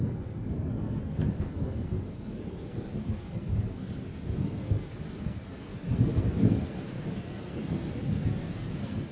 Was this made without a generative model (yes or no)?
no